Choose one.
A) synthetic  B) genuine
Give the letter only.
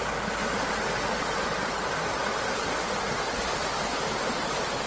B